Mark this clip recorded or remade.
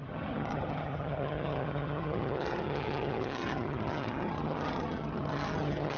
remade